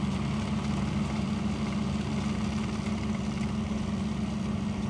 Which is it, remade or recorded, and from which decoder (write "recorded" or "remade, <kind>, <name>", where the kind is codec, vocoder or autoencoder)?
recorded